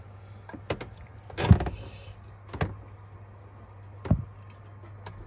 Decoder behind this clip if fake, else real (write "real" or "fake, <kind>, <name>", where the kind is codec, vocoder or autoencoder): real